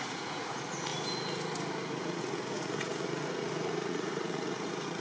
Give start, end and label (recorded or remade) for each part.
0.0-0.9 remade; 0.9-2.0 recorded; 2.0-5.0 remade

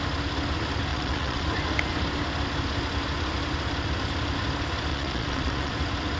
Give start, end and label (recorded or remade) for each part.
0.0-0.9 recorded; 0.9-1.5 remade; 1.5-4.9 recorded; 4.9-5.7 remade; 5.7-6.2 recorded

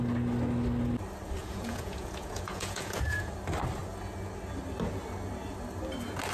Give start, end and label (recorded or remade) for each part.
0.0-1.4 recorded; 1.4-3.3 remade; 3.3-6.3 recorded

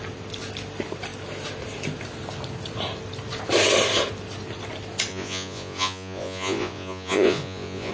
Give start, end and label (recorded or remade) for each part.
0.0-5.1 recorded; 5.1-7.9 remade